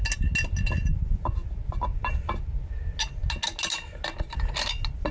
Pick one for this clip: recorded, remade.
recorded